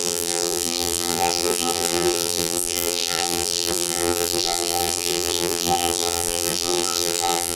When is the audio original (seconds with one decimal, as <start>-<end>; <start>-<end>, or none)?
none